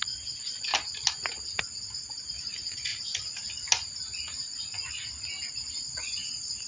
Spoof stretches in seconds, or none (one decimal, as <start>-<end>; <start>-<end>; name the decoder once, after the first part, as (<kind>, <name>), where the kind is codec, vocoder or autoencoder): 0.0-0.7 (vocoder, Vocos); 2.0-2.9; 5.5-6.7